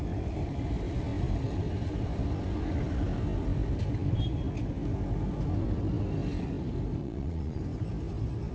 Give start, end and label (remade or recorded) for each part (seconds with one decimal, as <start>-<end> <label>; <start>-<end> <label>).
0.0-7.0 recorded; 7.0-7.6 remade; 7.6-8.5 recorded